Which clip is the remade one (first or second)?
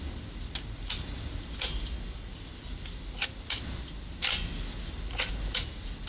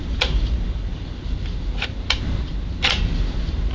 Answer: second